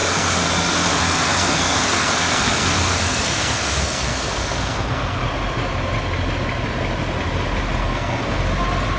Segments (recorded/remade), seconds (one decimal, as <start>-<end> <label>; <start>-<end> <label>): 0.0-5.2 remade; 5.2-7.8 recorded; 7.8-8.4 remade; 8.4-9.0 recorded